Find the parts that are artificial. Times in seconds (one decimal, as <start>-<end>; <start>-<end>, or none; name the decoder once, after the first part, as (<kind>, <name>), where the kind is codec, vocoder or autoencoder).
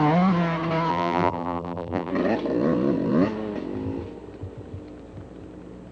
0.9-2.1 (vocoder, BigVGAN v2)